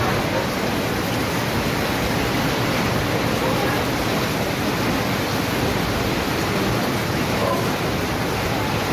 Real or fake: real